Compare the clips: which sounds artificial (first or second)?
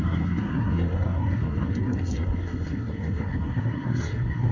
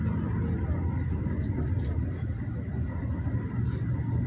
first